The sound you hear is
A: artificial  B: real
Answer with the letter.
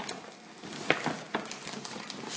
B